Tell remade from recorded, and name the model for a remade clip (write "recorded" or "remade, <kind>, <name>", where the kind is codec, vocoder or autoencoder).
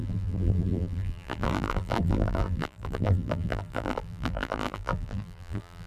remade, vocoder, BigVGAN v2